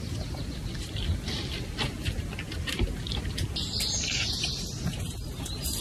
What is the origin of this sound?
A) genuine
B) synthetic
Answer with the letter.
A